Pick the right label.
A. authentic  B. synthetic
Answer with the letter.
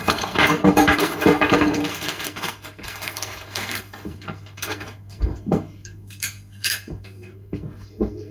B